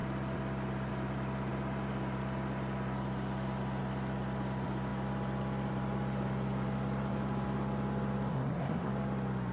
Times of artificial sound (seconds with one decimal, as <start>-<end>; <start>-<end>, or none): 8.3-8.9